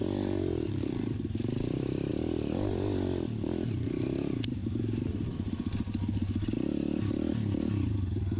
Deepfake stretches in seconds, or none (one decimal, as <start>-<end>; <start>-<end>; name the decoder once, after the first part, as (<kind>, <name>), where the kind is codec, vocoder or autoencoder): none